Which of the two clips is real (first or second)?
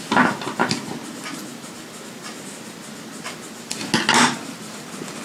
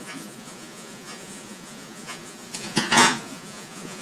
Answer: first